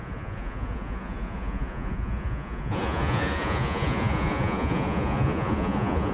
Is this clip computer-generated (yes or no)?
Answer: yes